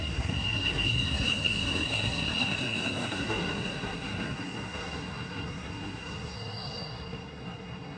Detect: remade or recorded remade